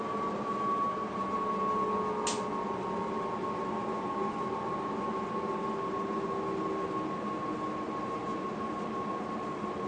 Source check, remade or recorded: recorded